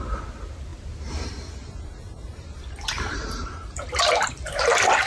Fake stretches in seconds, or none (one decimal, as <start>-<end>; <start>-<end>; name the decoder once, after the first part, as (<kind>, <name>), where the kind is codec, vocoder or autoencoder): 2.3-4.5 (vocoder, BigVGAN v2)